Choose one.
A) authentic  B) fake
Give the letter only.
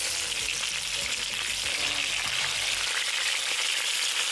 A